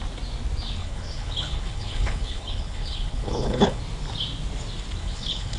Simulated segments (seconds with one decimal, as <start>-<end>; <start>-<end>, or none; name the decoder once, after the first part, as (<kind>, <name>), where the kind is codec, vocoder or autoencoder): 0.8-3.8 (codec, HILCodec); 5.0-5.6